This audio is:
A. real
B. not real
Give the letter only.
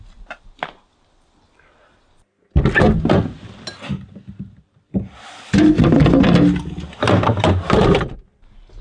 A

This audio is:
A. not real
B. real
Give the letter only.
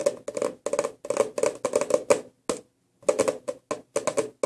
B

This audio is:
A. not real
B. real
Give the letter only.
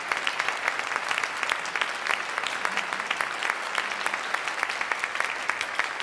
B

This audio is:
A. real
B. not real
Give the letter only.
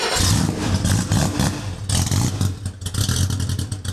A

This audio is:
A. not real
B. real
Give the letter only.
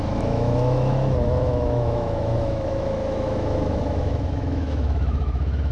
A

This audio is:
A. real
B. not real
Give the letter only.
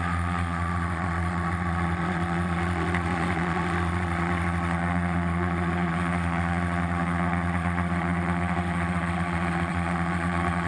B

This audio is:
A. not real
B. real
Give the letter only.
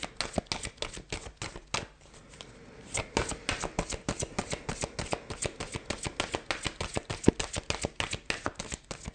B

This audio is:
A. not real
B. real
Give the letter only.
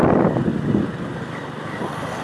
B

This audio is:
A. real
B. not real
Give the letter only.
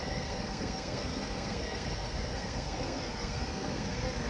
B